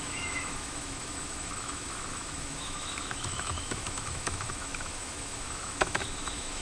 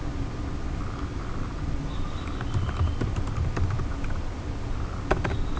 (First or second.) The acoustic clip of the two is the second